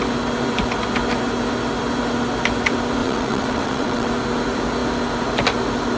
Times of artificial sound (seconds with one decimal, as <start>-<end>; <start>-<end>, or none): 3.0-4.1